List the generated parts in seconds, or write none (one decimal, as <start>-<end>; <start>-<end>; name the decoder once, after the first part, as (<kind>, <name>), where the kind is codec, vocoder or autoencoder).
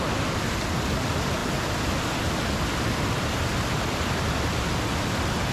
none